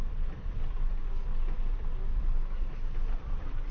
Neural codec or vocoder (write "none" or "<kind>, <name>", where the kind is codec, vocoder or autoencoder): none